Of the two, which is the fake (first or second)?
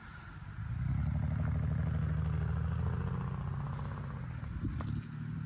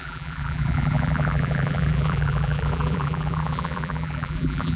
second